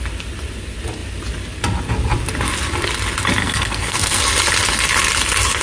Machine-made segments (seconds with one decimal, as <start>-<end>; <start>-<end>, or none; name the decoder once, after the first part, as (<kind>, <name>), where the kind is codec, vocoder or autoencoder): 3.4-4.2 (codec, SNAC)